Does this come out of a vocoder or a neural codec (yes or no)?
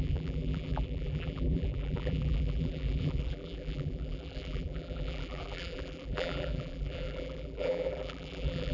yes